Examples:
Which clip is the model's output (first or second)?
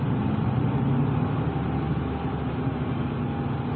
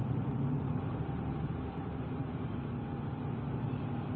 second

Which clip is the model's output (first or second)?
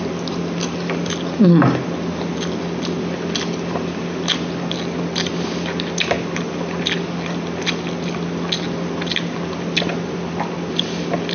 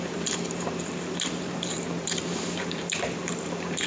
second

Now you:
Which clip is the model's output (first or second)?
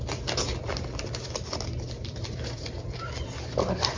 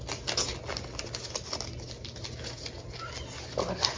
first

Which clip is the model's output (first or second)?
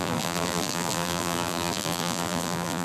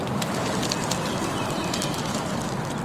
first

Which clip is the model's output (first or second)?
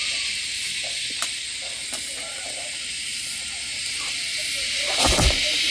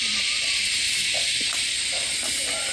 first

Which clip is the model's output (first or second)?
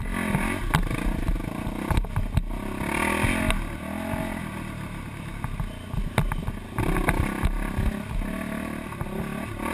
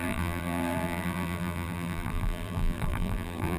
second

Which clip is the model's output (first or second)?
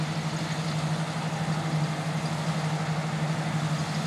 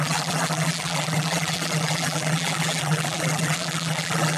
second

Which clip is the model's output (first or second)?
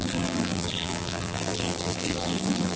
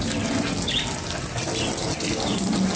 first